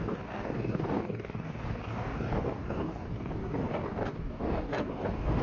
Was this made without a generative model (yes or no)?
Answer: no